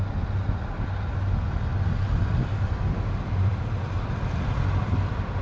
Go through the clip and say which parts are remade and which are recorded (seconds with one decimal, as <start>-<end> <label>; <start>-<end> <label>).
0.0-5.4 recorded